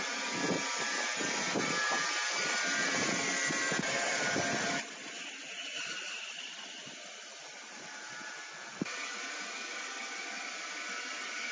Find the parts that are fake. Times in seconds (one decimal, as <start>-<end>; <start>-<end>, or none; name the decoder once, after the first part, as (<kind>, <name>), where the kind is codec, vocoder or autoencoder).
none

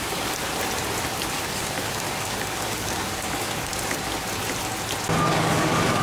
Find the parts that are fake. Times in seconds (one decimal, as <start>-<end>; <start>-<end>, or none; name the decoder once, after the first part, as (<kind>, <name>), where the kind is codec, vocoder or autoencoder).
0.0-0.4 (codec, DAC); 1.3-3.7; 5.3-6.0

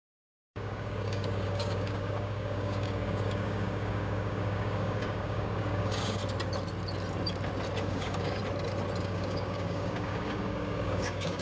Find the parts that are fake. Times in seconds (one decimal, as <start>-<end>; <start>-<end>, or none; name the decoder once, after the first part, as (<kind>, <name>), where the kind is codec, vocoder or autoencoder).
0.0-6.2 (codec, DAC); 7.8-8.4; 9.0-11.4

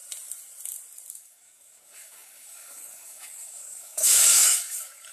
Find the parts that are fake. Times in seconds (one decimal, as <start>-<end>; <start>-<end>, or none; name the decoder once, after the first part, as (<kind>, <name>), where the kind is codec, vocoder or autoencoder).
1.1-5.1 (codec, DAC)

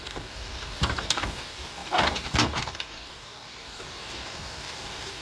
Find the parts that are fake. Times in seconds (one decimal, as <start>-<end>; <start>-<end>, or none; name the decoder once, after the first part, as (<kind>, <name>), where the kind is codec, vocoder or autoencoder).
0.0-5.2 (codec, DAC)

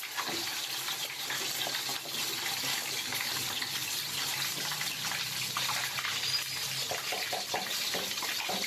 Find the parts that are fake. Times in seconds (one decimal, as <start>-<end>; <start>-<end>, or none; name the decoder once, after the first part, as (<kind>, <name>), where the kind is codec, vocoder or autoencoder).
2.7-3.3 (codec, DAC)

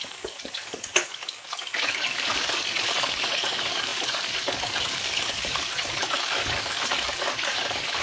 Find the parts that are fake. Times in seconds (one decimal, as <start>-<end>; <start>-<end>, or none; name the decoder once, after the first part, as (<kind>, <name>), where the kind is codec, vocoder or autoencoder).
0.0-8.0 (codec, DAC)